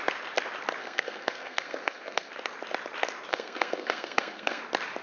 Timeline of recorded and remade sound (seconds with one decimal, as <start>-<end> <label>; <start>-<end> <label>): 0.0-0.8 recorded; 0.8-2.3 remade; 2.3-3.3 recorded; 3.3-4.6 remade; 4.6-5.0 recorded